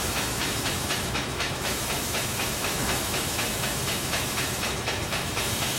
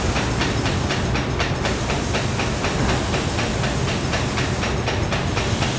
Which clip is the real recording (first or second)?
second